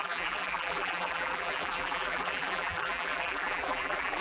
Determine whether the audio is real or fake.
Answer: fake